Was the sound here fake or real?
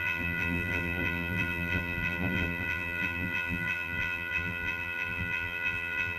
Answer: fake